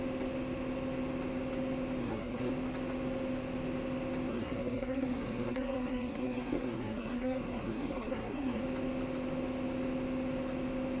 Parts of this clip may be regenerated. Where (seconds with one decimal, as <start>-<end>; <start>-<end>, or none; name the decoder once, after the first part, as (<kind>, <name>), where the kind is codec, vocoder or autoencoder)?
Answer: 2.0-2.5 (codec, SNAC); 4.3-8.6